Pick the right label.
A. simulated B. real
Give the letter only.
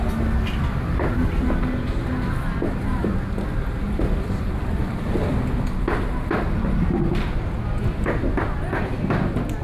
B